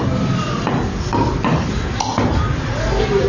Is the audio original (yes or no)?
yes